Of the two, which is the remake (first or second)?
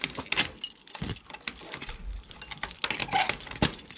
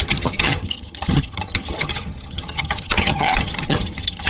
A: second